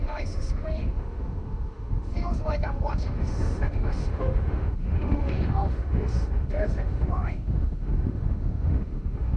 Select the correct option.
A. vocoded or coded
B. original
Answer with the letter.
A